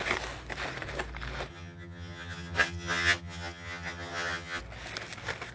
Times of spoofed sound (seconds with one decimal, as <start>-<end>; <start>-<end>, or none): 1.5-4.6